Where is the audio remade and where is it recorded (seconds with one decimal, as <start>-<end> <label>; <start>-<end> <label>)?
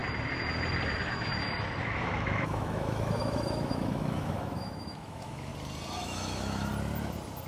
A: 0.0-1.8 recorded; 1.8-5.5 remade; 5.5-6.0 recorded; 6.0-6.7 remade; 6.7-7.5 recorded